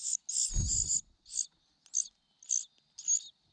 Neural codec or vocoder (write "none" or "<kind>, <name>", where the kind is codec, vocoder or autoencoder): none